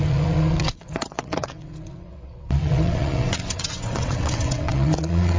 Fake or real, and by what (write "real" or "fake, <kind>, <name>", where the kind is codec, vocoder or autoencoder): fake, vocoder, WaveNeXt